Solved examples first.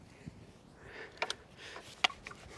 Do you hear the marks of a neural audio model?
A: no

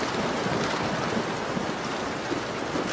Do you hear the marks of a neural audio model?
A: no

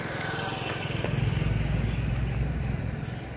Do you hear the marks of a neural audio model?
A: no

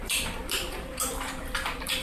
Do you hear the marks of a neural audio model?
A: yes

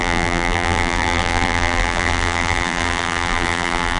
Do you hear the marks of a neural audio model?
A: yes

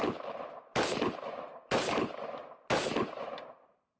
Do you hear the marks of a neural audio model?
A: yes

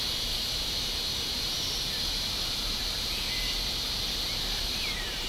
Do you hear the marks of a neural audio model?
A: yes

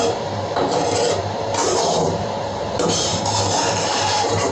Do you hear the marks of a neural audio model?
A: yes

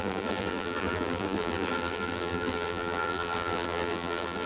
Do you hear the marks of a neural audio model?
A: yes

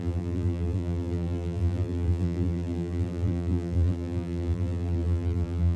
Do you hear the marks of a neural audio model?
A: yes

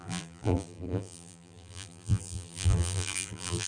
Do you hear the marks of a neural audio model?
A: yes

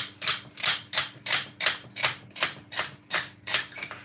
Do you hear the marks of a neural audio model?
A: no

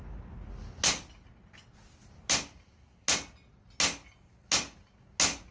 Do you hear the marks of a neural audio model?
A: no